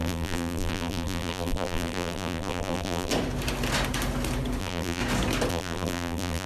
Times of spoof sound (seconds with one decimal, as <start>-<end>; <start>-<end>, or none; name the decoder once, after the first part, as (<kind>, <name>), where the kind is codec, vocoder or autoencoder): 0.0-3.1 (vocoder, BigVGAN v2); 4.6-5.0; 5.5-6.5